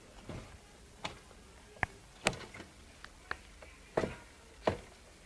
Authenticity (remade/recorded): recorded